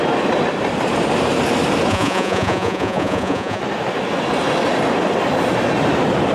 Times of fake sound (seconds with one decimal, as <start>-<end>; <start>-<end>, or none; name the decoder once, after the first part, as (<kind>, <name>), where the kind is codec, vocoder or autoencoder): 1.9-3.6 (vocoder, Vocos)